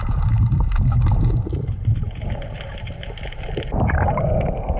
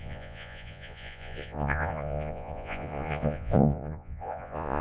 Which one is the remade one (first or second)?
second